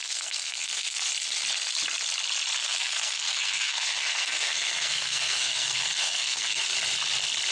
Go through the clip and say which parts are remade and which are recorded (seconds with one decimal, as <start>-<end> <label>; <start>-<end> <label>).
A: 0.0-1.1 remade; 1.1-2.6 recorded; 2.6-6.6 remade; 6.6-7.5 recorded

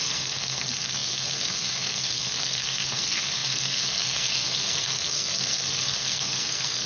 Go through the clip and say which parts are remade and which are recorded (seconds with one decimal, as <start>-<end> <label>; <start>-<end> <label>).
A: 0.0-6.9 remade

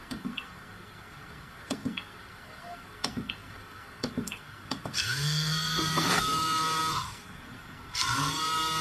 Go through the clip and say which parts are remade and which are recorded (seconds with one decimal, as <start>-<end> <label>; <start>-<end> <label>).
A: 0.0-8.8 remade

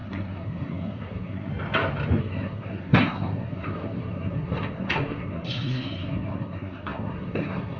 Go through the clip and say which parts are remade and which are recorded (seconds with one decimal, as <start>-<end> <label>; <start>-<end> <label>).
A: 0.0-1.5 remade; 1.5-2.2 recorded; 2.2-7.8 remade

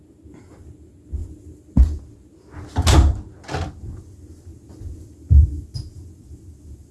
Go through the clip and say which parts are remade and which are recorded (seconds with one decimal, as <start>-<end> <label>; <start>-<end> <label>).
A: 0.0-6.9 recorded